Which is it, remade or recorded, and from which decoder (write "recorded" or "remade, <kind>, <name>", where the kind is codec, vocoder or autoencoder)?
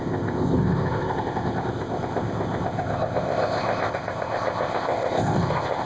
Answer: remade, codec, ZipCodec